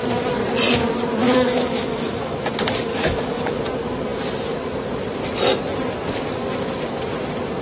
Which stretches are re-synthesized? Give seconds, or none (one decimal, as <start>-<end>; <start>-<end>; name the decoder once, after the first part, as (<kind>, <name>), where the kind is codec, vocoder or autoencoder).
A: 1.2-2.5 (autoencoder, DAC-VAE); 2.9-3.6